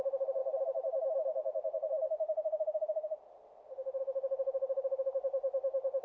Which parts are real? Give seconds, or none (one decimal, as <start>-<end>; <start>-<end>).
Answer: 0.0-6.0